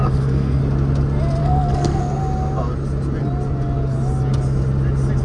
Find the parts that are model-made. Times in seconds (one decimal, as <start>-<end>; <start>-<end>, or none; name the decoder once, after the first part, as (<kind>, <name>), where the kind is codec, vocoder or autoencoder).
0.0-0.6 (codec, SNAC); 1.4-2.2